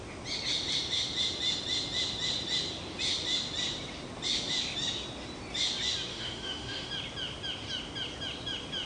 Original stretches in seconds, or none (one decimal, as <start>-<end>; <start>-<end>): 0.0-6.1; 6.9-8.9

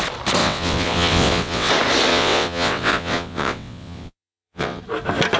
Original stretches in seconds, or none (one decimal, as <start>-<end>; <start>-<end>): 0.0-0.4; 1.7-2.1; 4.8-5.4

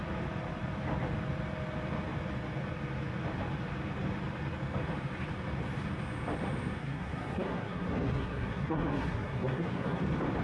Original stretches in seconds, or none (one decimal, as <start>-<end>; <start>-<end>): 0.0-6.8; 10.0-10.4

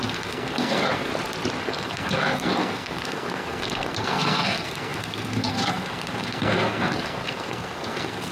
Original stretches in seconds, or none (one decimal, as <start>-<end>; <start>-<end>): 1.1-1.6

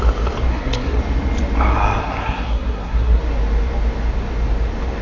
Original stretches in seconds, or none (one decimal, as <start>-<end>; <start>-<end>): 0.0-0.5; 1.0-2.0; 3.2-5.0

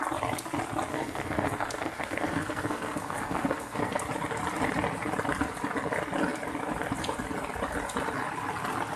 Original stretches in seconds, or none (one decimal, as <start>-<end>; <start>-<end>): 0.0-0.9; 4.0-9.0

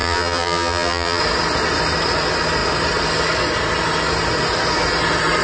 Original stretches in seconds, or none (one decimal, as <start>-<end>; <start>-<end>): 1.2-5.4

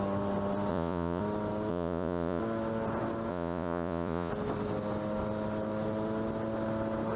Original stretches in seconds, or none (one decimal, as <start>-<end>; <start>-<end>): 0.0-0.7; 1.2-1.7; 2.4-3.3; 4.3-7.2